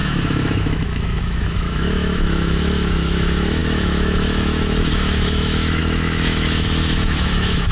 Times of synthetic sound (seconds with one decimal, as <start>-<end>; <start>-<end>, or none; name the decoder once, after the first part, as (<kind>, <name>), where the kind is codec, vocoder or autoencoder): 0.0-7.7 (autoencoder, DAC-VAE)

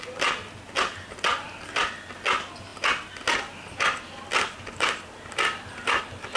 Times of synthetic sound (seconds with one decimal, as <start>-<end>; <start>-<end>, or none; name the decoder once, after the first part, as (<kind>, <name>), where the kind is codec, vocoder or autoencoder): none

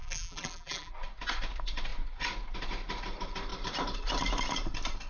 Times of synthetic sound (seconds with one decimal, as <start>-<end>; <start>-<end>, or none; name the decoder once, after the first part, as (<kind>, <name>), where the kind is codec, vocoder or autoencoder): 0.0-0.9 (vocoder, BigVGAN v2)

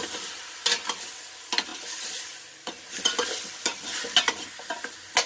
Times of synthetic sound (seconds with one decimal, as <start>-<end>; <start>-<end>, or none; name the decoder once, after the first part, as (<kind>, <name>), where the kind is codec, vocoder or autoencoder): none

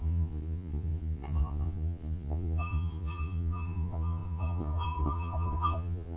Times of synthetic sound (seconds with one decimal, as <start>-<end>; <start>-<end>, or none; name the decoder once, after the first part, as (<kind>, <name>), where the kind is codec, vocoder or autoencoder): 0.0-6.2 (vocoder, Vocos)

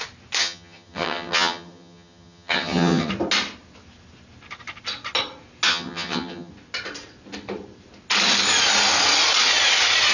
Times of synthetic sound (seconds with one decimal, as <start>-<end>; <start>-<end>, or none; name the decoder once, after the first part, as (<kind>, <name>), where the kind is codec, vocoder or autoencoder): 0.4-3.1 (vocoder, HiFi-GAN); 5.7-6.5

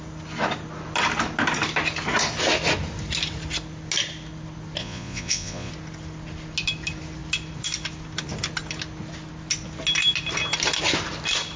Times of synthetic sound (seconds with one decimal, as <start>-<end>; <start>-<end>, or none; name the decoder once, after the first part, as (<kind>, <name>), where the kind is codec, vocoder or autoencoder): 4.8-5.7 (vocoder, Vocos)

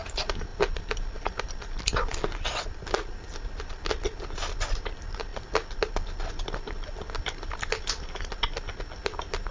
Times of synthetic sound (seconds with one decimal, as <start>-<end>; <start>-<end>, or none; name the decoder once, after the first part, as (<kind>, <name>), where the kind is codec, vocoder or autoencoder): none